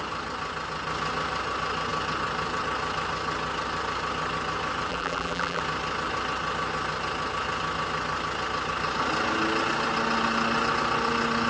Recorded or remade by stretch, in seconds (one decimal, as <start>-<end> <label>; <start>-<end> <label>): 0.0-4.9 recorded; 4.9-5.6 remade; 5.6-11.5 recorded